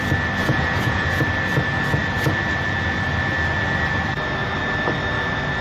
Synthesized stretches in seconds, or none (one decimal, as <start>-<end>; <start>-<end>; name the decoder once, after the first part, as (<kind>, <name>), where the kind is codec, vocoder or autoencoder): 0.4-1.2 (vocoder, Vocos)